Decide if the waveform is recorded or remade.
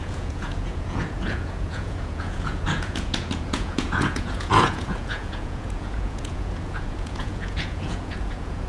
remade